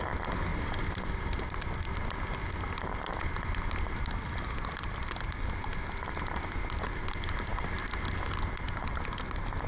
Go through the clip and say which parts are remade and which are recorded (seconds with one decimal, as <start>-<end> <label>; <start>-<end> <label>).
0.0-9.7 recorded